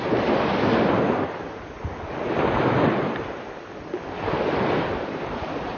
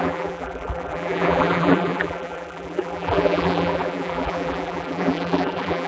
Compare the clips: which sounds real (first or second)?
first